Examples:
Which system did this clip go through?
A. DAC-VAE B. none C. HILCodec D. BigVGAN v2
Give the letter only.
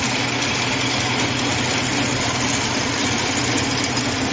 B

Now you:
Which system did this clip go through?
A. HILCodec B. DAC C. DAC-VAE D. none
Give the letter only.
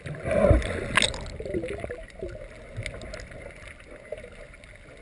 D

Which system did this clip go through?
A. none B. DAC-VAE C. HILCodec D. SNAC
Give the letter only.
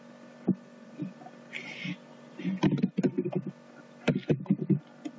A